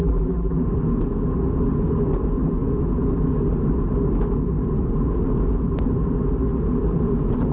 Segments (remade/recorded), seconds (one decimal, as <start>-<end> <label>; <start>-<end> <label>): 0.0-0.6 remade; 0.6-7.5 recorded